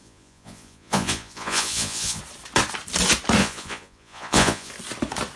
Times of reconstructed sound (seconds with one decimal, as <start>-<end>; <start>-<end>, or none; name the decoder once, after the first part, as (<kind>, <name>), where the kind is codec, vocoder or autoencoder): 0.0-2.2 (vocoder, Vocos); 3.4-4.7